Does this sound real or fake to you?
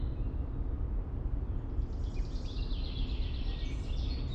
real